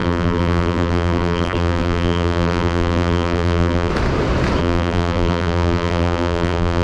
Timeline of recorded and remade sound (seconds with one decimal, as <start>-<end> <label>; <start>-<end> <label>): 0.0-3.9 remade; 3.9-4.6 recorded; 4.6-6.8 remade